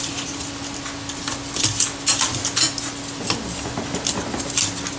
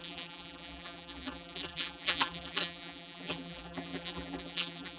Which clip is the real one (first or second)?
first